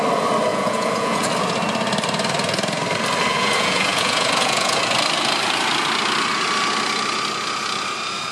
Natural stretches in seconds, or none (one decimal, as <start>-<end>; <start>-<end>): 0.0-0.5; 1.3-3.3; 4.8-8.3